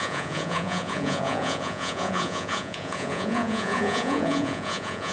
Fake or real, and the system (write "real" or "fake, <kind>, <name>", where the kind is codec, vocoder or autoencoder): fake, vocoder, Vocos